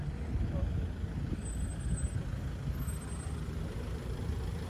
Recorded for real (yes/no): yes